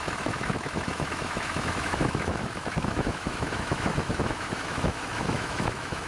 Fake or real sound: fake